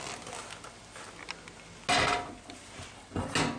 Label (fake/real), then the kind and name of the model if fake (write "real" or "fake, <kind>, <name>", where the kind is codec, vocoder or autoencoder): real